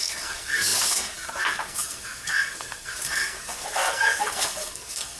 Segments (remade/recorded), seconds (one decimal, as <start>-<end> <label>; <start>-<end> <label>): 0.0-5.2 remade